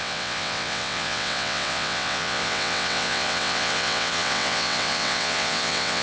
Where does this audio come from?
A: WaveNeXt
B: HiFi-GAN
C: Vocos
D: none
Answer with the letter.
A